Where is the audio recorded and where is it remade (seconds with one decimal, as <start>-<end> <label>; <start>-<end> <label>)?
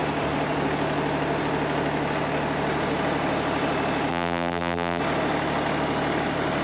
0.0-4.1 recorded; 4.1-5.0 remade; 5.0-6.6 recorded